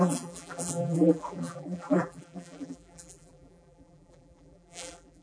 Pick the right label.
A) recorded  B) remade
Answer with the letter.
B